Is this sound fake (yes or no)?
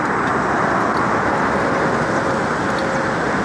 no